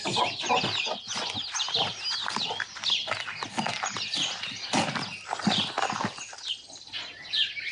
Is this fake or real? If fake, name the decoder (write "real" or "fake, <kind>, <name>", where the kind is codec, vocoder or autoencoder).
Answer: real